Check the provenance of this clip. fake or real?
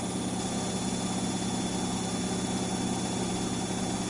real